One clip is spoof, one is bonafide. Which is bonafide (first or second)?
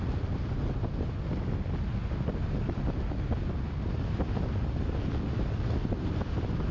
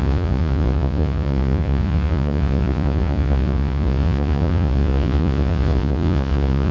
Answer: first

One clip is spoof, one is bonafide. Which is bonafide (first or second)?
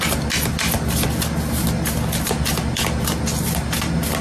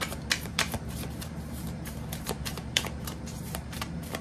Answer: first